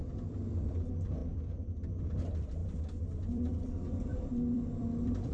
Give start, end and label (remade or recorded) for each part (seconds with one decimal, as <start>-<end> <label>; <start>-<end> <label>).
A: 0.0-1.2 remade; 1.2-1.7 recorded; 1.7-2.6 remade; 2.6-3.2 recorded; 3.2-5.3 remade